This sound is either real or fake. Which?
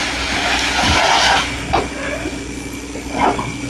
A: real